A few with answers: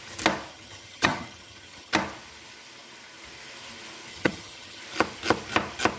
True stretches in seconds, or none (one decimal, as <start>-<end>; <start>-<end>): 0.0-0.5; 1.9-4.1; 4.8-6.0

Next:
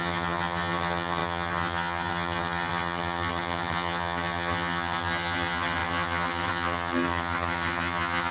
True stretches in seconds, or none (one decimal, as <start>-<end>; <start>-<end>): none

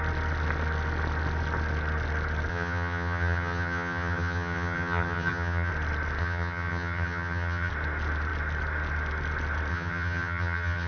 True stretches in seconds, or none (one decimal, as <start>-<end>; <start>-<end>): 0.0-2.5; 5.7-6.2; 7.7-9.7

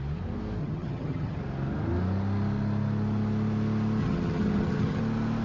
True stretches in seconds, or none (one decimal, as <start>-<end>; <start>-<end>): 0.0-0.6; 1.4-4.0; 5.0-5.4